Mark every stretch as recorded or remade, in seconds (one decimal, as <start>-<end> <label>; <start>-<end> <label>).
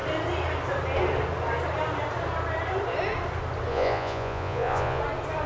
0.0-3.7 recorded; 3.7-5.0 remade; 5.0-5.5 recorded